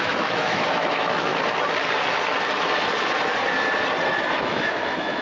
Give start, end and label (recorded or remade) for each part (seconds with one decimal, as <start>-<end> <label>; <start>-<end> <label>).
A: 0.0-1.3 remade; 1.3-4.4 recorded; 4.4-5.2 remade